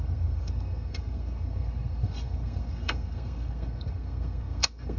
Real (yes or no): no